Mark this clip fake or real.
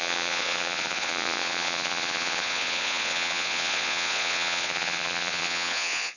fake